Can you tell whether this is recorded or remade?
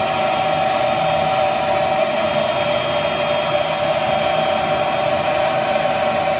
recorded